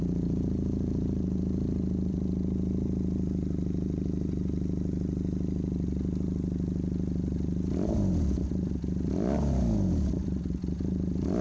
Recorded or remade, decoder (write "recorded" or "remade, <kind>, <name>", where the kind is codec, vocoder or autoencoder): recorded